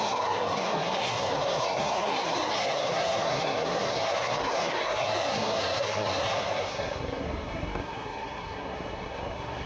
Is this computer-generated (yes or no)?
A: yes